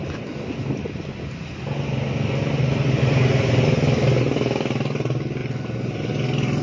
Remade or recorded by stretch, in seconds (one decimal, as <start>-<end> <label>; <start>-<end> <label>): 0.0-6.6 recorded